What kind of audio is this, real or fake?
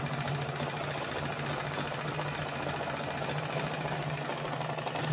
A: real